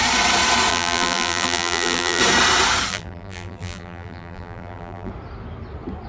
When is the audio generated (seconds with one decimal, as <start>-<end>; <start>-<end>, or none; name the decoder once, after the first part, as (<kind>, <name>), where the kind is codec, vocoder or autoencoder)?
0.7-2.2 (vocoder, BigVGAN v2); 2.9-5.1